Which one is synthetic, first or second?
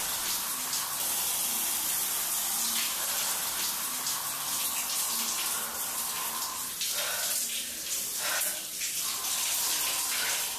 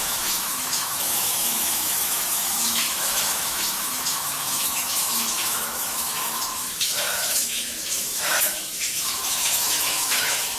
second